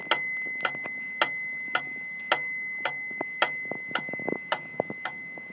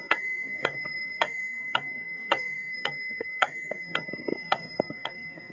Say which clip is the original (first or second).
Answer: first